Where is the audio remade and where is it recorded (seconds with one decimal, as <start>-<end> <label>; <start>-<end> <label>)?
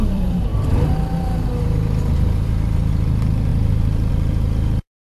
0.0-5.1 remade